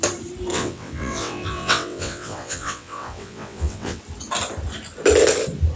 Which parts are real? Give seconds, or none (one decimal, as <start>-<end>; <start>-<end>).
0.0-0.5; 4.0-5.8